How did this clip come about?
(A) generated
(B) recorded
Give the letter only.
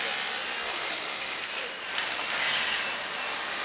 B